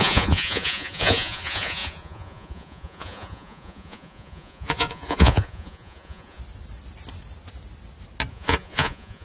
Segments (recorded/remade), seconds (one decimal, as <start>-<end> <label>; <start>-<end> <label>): 0.0-6.4 remade; 6.4-8.3 recorded; 8.3-9.2 remade